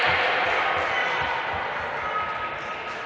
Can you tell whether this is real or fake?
real